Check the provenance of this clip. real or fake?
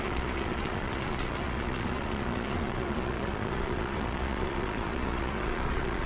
fake